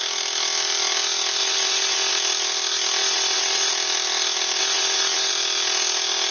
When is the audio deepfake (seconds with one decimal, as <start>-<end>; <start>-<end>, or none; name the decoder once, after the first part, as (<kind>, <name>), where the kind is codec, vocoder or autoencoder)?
1.4-2.1 (vocoder, WaveNeXt); 3.0-3.7; 4.6-5.3